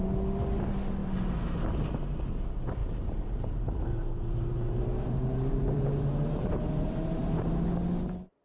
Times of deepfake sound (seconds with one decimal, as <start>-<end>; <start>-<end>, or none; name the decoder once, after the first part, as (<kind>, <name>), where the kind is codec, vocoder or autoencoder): 2.8-7.5 (vocoder, BigVGAN v2)